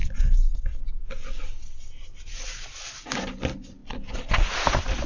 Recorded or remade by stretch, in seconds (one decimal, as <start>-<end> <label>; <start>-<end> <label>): 0.0-5.1 recorded

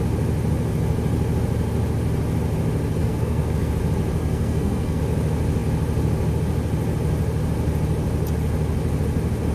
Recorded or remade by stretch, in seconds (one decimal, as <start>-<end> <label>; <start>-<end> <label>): 0.0-3.0 recorded; 3.0-3.7 remade; 3.7-4.2 recorded; 4.2-5.0 remade; 5.0-9.5 recorded